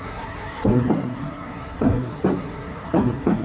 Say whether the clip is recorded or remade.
remade